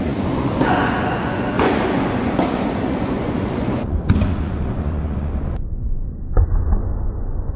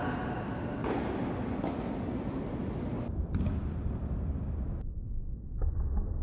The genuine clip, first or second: second